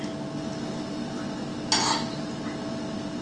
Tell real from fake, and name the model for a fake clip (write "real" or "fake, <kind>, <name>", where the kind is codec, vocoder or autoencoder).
real